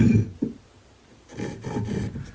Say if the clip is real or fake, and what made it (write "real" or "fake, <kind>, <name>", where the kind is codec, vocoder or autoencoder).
real